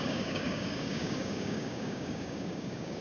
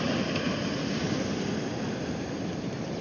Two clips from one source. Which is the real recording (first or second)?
second